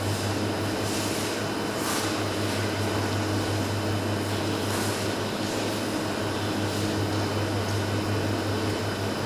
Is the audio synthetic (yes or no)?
no